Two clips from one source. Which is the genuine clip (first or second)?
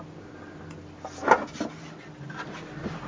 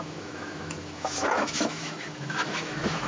first